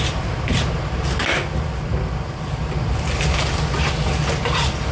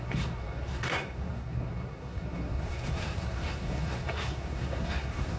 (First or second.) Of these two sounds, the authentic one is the first